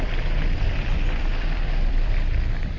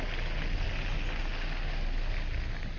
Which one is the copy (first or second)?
first